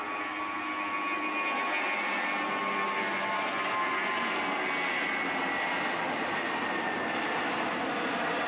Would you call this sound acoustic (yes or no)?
yes